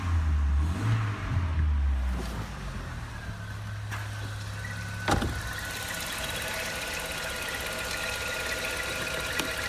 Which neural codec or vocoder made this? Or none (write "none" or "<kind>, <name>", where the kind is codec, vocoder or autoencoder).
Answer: none